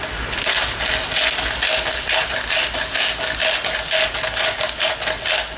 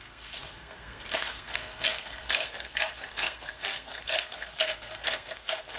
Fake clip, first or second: second